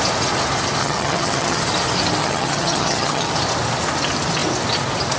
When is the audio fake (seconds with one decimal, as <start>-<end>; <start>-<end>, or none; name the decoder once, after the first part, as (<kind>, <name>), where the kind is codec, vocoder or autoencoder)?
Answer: 0.8-1.6 (vocoder, HiFi-GAN); 2.2-3.3